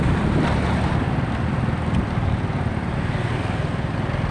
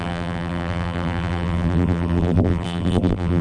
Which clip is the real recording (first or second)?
first